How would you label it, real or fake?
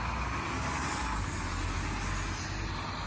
real